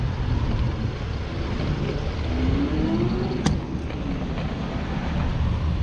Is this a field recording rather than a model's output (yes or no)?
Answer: yes